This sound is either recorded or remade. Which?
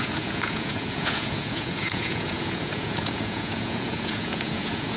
remade